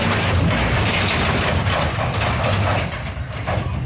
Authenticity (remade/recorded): recorded